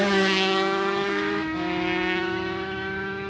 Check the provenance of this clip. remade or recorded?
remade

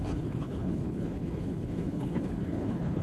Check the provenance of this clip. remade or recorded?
remade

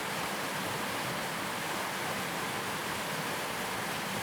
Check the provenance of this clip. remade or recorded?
recorded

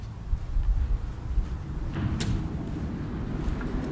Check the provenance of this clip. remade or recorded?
recorded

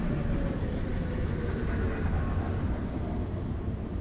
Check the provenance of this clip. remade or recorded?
recorded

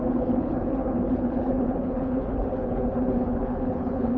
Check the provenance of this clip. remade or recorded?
remade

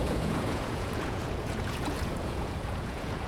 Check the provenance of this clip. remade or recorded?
remade